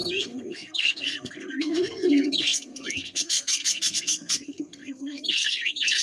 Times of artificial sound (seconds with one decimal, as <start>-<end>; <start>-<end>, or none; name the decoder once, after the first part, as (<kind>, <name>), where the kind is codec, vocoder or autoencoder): 0.0-6.0 (codec, SNAC)